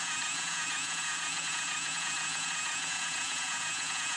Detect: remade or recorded remade